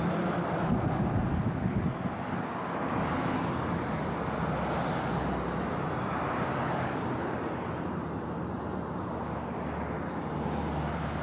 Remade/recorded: recorded